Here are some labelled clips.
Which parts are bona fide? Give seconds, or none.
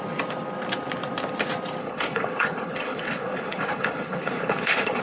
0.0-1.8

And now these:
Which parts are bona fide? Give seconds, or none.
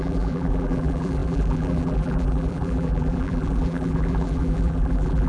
none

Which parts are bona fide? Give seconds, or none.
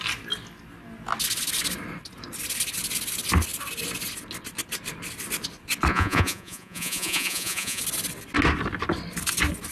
0.0-5.9; 7.8-9.7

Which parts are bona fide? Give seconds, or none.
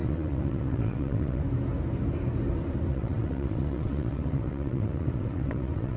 1.4-2.9